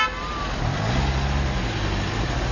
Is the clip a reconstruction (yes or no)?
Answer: no